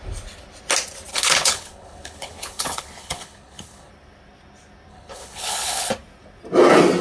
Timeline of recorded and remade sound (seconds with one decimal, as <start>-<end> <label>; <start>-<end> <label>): 0.0-1.1 recorded; 1.1-3.9 remade; 3.9-4.9 recorded; 4.9-5.9 remade; 5.9-7.0 recorded